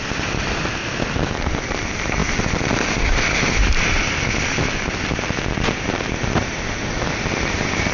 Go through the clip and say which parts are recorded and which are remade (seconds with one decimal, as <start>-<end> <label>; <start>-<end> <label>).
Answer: 0.0-7.9 recorded